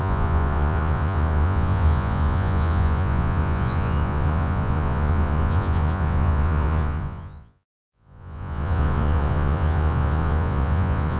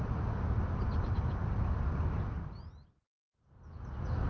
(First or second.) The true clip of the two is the second